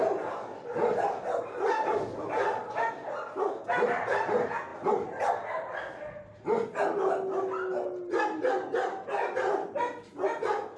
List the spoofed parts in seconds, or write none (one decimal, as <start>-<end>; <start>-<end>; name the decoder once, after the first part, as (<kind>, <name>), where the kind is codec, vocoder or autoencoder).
4.7-5.2 (vocoder, BigVGAN v2)